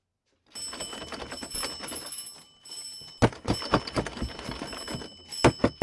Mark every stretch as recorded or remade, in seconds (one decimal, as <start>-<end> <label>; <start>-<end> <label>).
0.0-5.8 recorded